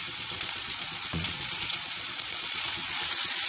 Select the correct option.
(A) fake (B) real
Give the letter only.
A